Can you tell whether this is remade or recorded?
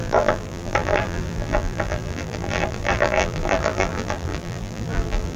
remade